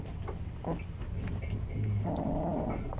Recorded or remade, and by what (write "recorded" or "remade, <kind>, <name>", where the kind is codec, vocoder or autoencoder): recorded